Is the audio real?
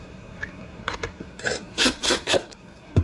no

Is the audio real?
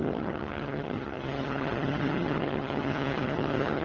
no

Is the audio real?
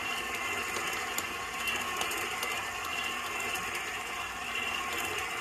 yes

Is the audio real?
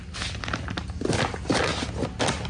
yes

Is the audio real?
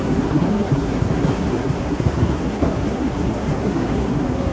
no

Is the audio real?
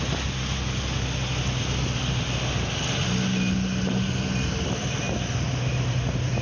yes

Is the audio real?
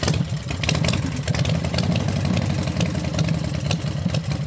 yes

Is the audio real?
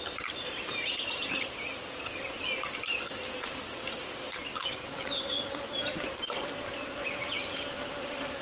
yes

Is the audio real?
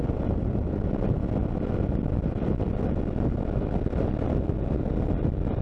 yes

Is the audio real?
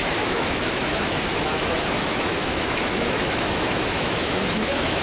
no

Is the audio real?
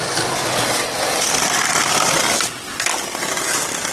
yes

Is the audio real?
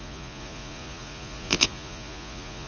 no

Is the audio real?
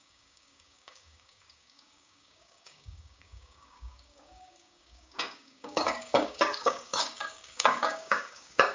no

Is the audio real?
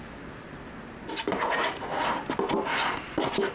yes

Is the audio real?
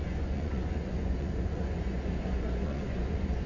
no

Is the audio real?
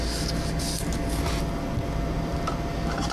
yes